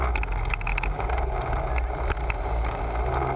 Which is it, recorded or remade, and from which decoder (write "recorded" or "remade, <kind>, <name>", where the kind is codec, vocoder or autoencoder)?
recorded